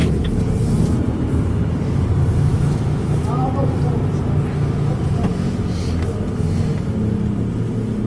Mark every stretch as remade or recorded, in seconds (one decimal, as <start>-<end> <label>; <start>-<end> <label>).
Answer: 0.0-2.5 recorded; 2.5-3.4 remade; 3.4-8.1 recorded